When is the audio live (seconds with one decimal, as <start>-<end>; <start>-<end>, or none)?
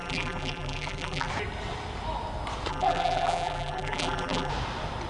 1.3-2.7; 4.5-5.1